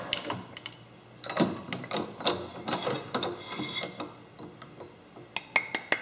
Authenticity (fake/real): real